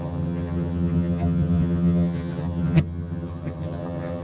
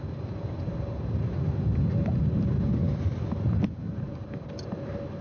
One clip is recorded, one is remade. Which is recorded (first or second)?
second